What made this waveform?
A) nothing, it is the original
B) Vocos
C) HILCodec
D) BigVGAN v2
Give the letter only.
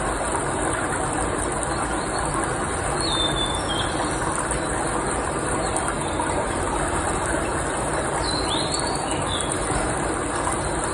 A